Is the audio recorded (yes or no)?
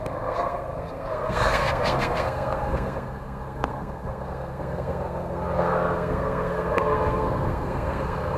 no